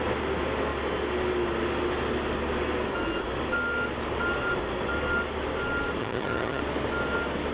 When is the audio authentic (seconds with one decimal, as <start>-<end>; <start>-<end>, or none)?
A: 0.0-6.0; 6.6-7.5